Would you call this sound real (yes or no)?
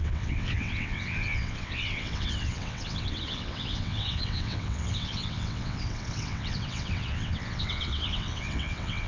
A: no